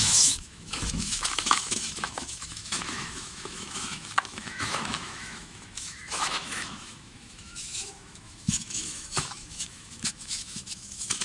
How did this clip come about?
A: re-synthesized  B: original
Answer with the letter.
A